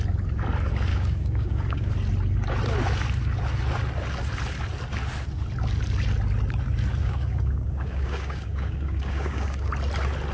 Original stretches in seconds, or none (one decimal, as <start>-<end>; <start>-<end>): 0.0-0.9; 1.9-7.0; 9.7-10.3